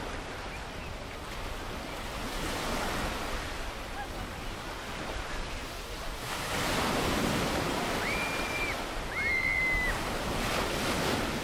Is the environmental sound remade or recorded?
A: recorded